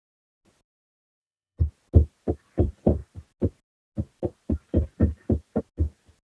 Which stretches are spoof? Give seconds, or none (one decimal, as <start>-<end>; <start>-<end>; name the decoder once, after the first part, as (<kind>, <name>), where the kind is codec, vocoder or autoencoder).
1.2-1.7 (codec, HILCodec)